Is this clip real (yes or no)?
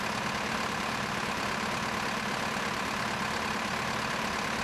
yes